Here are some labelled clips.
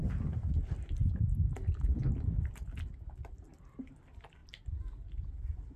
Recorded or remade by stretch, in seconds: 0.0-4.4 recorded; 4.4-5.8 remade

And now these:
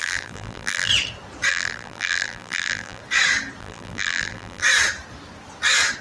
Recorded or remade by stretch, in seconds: 0.0-0.9 remade; 0.9-1.5 recorded; 1.5-3.0 remade; 3.0-3.6 recorded; 3.6-4.6 remade; 4.6-6.0 recorded

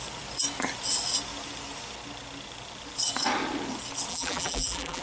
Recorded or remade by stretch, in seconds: 0.0-4.1 recorded; 4.1-5.0 remade